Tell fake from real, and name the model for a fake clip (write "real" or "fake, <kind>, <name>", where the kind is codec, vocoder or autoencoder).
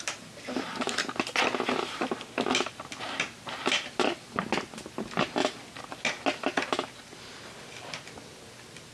real